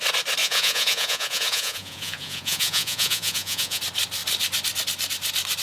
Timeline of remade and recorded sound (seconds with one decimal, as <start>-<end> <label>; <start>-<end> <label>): 0.0-0.4 recorded; 0.4-3.8 remade; 3.8-5.6 recorded